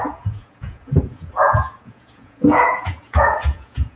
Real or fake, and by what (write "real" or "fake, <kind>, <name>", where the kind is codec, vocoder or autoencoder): fake, vocoder, Vocos